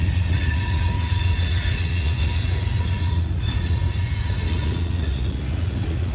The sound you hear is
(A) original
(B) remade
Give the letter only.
B